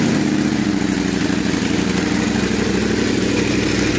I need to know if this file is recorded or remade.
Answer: recorded